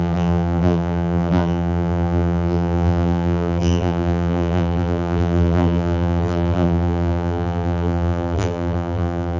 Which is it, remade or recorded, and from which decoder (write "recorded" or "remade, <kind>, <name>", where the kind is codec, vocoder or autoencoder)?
remade, vocoder, BigVGAN v2